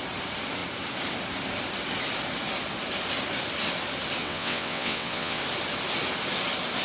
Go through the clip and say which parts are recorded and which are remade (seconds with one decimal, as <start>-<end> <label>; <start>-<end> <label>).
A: 0.0-4.2 recorded; 4.2-5.4 remade; 5.4-6.8 recorded